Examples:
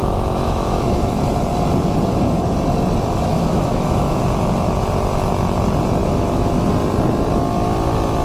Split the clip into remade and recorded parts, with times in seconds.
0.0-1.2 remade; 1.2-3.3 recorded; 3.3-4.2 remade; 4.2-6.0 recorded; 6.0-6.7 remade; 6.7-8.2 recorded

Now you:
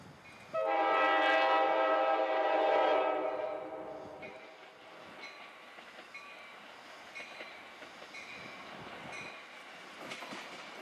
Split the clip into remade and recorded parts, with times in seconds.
0.0-10.8 recorded